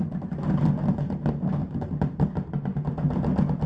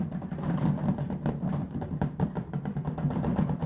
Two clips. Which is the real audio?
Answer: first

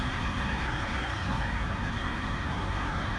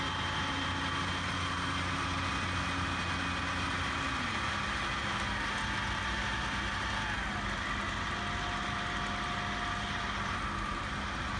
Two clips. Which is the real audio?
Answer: second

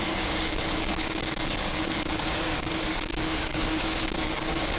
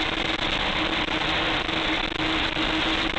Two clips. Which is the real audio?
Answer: second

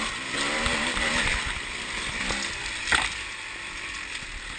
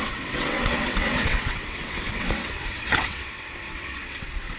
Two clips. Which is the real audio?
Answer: first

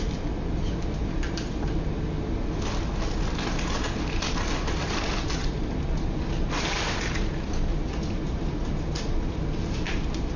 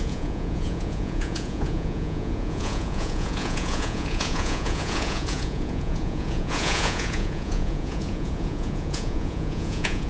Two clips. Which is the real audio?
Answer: first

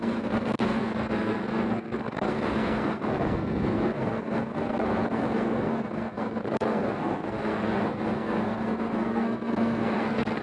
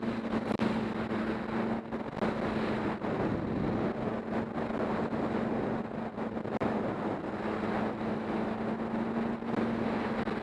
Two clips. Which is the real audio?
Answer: second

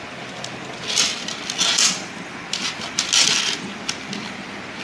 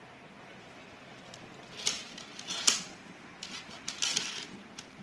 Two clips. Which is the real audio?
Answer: first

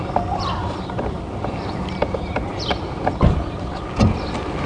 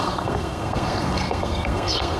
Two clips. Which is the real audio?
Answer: first